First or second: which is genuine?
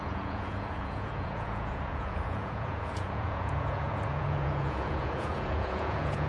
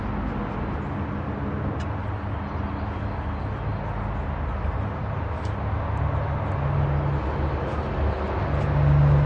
second